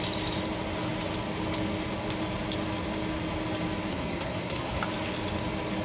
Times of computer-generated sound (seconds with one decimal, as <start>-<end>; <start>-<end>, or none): 3.9-4.8